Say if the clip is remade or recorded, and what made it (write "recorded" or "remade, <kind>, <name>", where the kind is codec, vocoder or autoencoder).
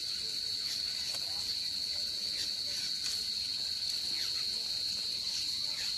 recorded